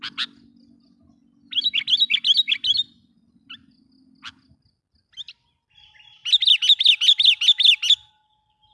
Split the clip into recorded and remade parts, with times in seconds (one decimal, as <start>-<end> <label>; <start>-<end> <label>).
0.0-8.7 recorded